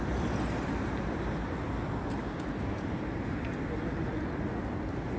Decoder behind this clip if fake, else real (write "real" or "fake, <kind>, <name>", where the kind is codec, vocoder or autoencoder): real